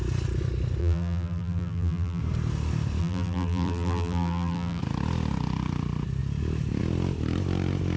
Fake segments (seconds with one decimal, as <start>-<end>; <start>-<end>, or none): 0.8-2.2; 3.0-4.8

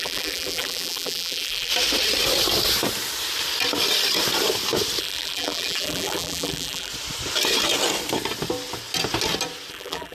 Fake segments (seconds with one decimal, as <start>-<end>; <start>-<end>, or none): 0.0-1.7; 5.0-6.9; 9.7-10.1

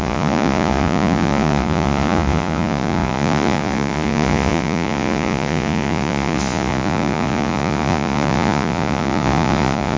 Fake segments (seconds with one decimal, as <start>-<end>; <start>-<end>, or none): 0.0-10.0